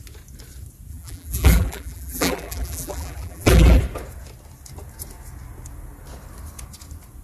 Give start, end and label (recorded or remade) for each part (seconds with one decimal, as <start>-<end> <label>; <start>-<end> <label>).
0.0-0.9 recorded; 0.9-3.8 remade; 3.8-7.2 recorded